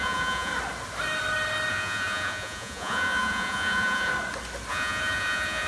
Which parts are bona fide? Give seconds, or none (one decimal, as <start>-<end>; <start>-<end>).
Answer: 0.5-1.7; 4.1-4.7